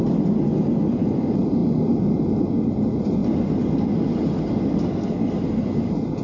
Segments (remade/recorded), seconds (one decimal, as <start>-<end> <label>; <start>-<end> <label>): 0.0-6.2 recorded